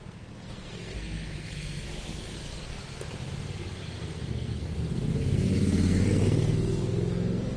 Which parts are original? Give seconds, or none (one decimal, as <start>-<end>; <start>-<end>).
2.8-3.8